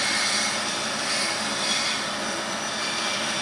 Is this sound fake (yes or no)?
no